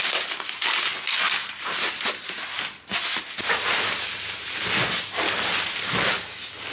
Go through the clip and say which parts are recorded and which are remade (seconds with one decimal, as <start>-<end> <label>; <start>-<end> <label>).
0.0-6.7 recorded

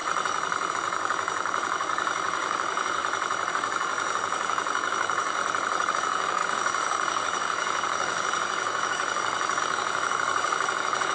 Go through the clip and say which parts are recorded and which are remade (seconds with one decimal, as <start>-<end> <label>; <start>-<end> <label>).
0.0-0.7 recorded; 0.7-3.0 remade; 3.0-3.5 recorded; 3.5-5.4 remade; 5.4-5.9 recorded; 5.9-11.1 remade

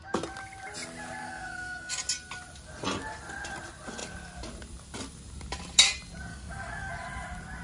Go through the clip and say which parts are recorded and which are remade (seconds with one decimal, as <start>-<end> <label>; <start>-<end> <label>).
0.0-1.2 recorded; 1.2-1.9 remade; 1.9-6.3 recorded; 6.3-6.9 remade; 6.9-7.6 recorded

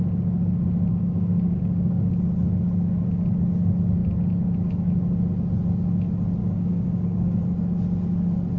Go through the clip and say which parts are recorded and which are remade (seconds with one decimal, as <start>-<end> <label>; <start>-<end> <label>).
0.0-0.9 recorded; 0.9-2.1 remade; 2.1-6.4 recorded; 6.4-7.4 remade; 7.4-8.6 recorded

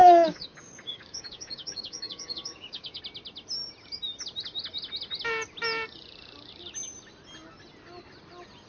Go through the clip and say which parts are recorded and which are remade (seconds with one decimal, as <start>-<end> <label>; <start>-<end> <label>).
0.0-3.0 remade; 3.0-8.7 recorded

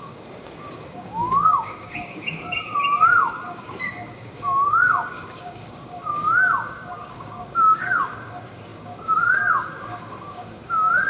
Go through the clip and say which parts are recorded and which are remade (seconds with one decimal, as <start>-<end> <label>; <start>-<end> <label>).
0.0-11.1 remade